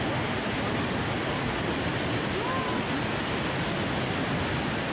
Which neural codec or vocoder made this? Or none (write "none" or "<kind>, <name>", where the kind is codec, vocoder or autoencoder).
none